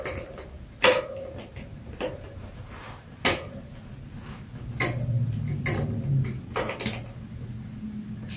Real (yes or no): yes